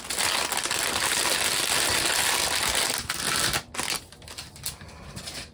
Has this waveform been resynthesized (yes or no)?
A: no